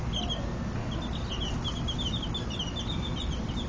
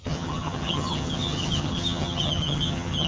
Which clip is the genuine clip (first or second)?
first